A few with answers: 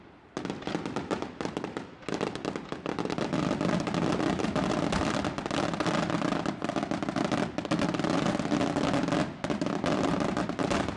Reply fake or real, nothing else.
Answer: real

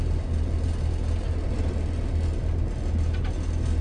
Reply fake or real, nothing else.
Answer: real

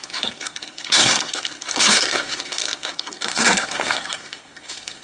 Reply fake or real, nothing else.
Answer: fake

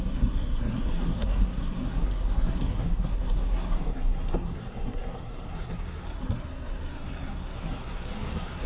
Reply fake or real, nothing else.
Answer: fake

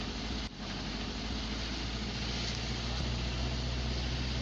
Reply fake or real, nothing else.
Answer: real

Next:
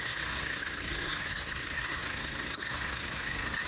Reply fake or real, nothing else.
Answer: fake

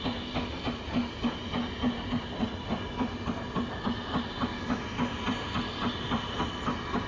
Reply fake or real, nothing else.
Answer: real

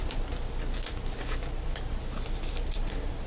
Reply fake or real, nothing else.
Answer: real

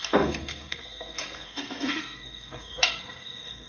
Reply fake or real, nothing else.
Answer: fake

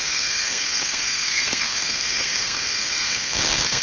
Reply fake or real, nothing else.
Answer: fake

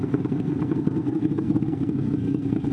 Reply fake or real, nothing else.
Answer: fake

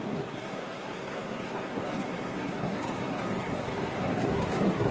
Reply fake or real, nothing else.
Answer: fake